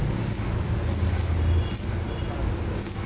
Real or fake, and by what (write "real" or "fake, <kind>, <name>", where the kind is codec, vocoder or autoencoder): real